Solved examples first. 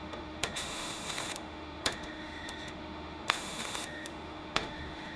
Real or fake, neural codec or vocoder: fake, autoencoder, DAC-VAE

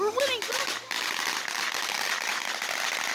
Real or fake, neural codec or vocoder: real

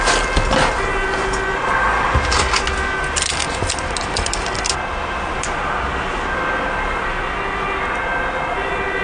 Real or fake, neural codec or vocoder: real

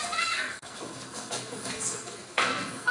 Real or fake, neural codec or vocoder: fake, codec, SNAC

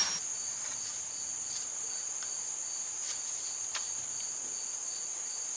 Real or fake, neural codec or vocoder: real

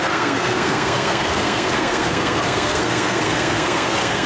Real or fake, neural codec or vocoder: fake, codec, SNAC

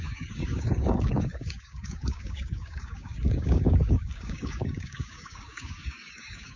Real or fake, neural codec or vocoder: fake, codec, DAC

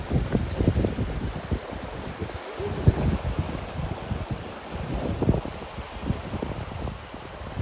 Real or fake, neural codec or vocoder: real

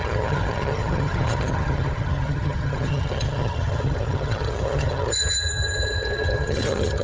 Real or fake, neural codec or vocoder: fake, vocoder, HiFi-GAN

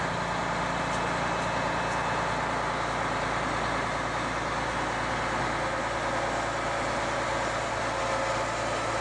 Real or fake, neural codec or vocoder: real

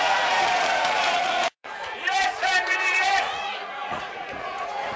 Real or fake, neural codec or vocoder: fake, vocoder, Vocos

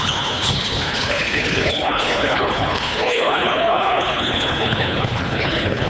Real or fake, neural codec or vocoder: fake, codec, HILCodec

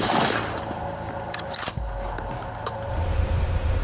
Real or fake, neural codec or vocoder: real